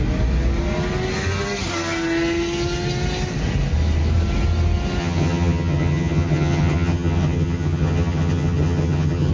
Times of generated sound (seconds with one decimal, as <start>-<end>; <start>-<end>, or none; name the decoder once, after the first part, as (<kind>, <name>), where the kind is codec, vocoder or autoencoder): 5.0-9.3 (vocoder, HiFi-GAN)